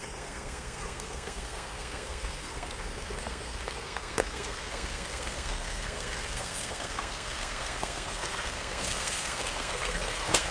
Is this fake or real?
fake